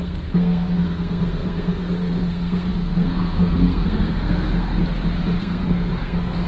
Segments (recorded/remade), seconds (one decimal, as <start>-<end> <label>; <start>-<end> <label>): 0.0-4.8 remade; 4.8-5.4 recorded; 5.4-6.5 remade